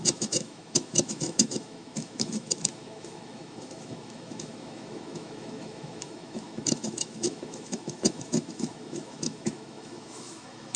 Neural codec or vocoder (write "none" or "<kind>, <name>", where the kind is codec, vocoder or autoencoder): autoencoder, DAC-VAE